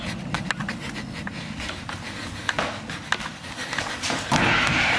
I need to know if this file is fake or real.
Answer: real